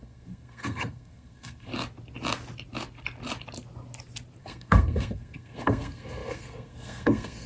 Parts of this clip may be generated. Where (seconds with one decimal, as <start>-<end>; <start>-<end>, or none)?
0.0-1.7; 4.4-7.5